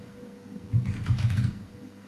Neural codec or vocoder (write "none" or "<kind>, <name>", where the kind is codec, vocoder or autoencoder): codec, SNAC